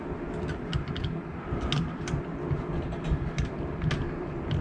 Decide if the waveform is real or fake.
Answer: real